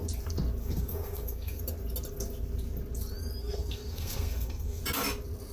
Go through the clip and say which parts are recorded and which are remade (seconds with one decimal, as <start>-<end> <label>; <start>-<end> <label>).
0.0-0.6 recorded; 0.6-1.6 remade; 1.6-3.4 recorded; 3.4-4.8 remade; 4.8-5.5 recorded